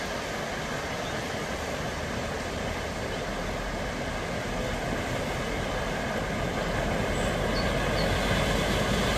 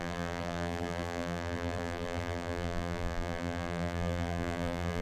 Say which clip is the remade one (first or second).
second